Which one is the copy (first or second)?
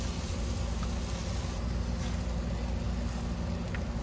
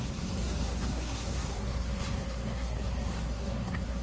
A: second